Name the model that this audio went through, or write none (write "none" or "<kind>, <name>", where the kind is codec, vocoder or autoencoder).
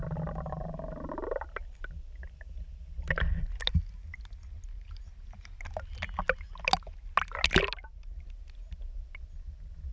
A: none